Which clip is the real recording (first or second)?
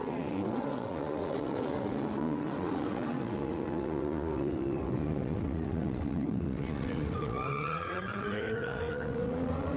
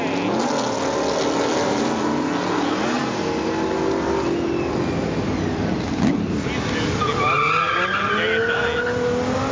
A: second